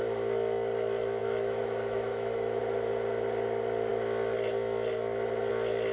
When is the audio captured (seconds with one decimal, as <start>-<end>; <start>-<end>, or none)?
0.0-1.2; 2.6-5.9